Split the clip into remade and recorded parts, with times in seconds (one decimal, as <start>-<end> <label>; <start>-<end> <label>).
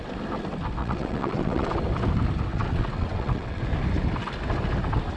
0.0-0.8 recorded; 0.8-1.7 remade; 1.7-2.5 recorded; 2.5-3.6 remade; 3.6-5.2 recorded